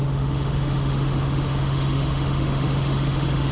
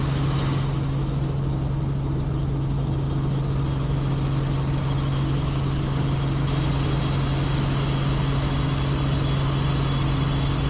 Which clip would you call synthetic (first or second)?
first